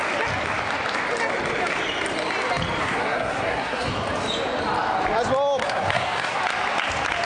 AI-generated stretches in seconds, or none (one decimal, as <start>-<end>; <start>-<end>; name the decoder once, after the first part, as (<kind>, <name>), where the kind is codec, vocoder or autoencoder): 2.8-3.9 (codec, SNAC); 5.6-6.4